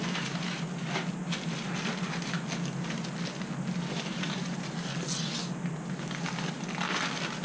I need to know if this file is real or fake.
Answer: real